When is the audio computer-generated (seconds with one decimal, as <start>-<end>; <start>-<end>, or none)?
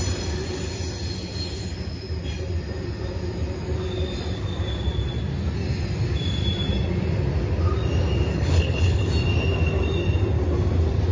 8.3-9.1